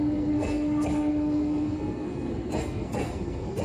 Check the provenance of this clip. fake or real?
fake